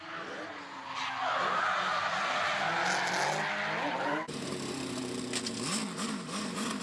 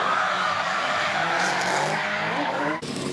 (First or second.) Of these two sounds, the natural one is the first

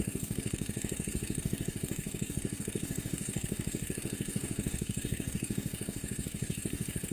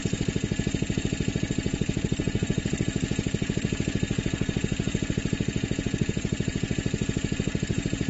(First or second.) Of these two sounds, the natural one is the second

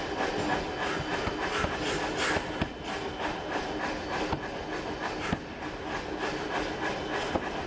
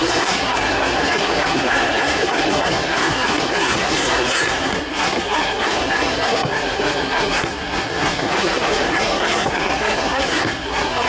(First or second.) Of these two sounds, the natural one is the first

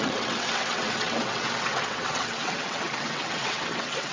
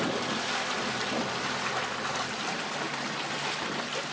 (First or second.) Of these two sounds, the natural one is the second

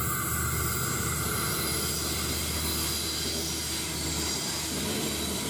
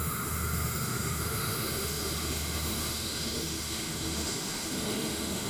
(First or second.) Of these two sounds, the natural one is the first